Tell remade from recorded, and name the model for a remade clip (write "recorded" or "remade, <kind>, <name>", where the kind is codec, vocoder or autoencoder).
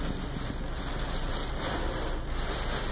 recorded